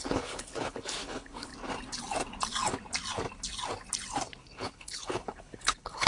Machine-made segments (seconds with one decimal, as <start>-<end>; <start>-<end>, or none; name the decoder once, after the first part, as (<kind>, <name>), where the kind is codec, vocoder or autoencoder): 0.0-1.5 (codec, HILCodec); 4.4-6.1